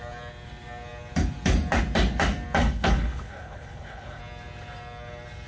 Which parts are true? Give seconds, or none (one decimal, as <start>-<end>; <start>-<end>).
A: 0.0-2.6; 4.2-5.5